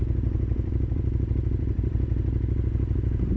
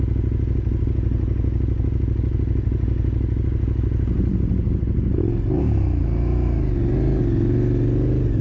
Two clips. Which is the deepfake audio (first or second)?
first